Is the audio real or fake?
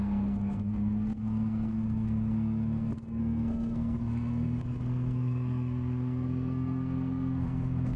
fake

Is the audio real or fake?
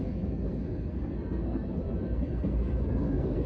fake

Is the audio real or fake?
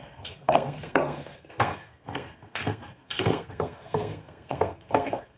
fake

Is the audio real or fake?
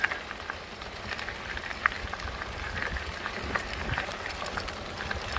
real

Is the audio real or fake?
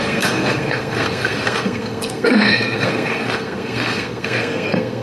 fake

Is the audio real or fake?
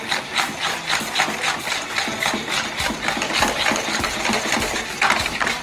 real